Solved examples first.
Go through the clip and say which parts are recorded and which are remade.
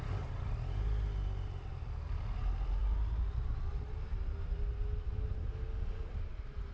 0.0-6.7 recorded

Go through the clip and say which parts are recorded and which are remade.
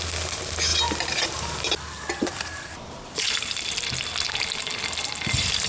0.0-0.7 recorded; 0.7-4.1 remade; 4.1-5.7 recorded